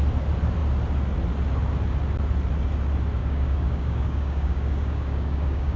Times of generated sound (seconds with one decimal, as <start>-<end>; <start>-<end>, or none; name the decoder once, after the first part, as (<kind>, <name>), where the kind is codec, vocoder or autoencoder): 3.2-5.8 (codec, DAC)